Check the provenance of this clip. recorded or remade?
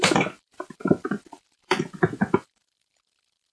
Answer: remade